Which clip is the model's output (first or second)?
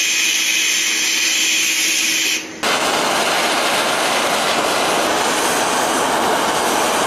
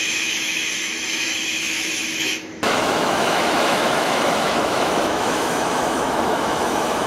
second